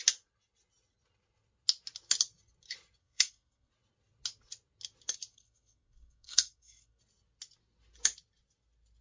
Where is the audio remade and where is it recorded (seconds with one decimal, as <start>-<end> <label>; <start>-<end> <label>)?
0.0-3.0 recorded; 3.0-3.7 remade; 3.7-5.3 recorded; 5.3-7.0 remade; 7.0-9.0 recorded